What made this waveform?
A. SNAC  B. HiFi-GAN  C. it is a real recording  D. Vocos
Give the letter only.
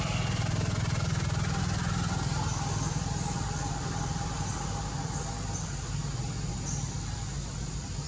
C